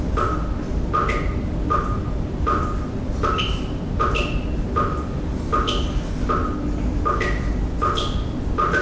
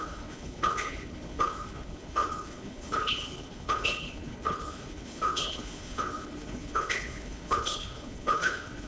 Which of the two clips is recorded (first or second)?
first